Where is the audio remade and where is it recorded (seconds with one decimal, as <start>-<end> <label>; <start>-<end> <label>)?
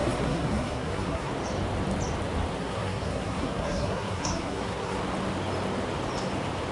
0.0-1.3 remade; 1.3-2.6 recorded; 2.6-5.0 remade; 5.0-6.7 recorded